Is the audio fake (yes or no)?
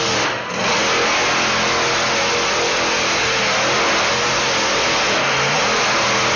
no